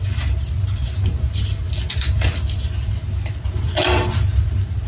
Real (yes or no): yes